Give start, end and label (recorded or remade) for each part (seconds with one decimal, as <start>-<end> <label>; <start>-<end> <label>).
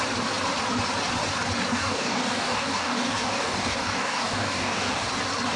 0.0-1.7 recorded; 1.7-5.1 remade; 5.1-5.6 recorded